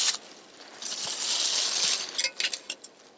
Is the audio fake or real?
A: real